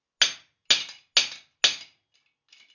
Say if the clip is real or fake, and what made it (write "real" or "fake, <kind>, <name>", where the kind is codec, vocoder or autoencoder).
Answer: real